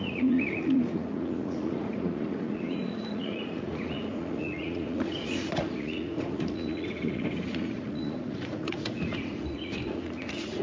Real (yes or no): no